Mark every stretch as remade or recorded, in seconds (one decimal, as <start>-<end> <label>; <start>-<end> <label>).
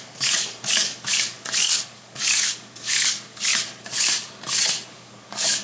0.0-3.5 remade; 3.5-4.9 recorded; 4.9-5.6 remade